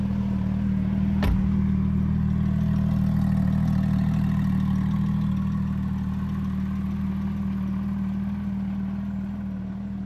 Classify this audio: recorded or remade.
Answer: recorded